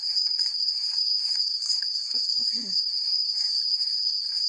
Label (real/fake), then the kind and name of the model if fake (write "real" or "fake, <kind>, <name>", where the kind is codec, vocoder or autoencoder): fake, codec, SNAC